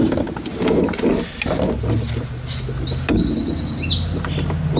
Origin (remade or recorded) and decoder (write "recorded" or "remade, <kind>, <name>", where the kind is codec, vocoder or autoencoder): recorded